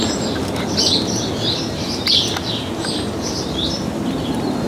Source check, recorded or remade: recorded